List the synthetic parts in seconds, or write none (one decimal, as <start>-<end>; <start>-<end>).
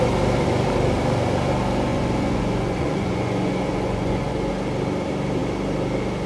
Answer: 1.9-4.5